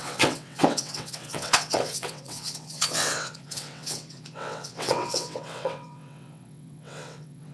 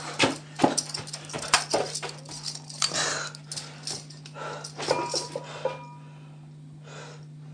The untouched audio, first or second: second